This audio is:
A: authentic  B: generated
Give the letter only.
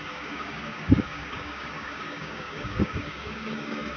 B